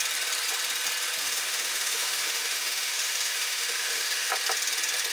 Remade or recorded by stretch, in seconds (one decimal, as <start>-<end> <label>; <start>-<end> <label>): 0.0-1.2 recorded; 1.2-4.3 remade; 4.3-5.1 recorded